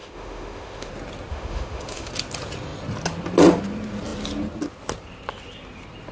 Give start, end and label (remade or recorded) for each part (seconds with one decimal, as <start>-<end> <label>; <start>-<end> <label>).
0.0-0.9 remade; 0.9-1.3 recorded; 1.3-2.1 remade; 2.1-6.1 recorded